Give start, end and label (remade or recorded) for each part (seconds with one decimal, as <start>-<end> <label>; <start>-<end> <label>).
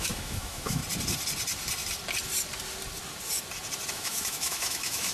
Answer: 0.0-0.8 remade; 0.8-3.9 recorded; 3.9-5.1 remade